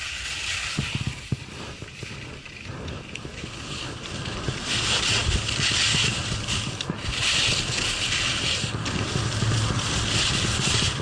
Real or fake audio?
real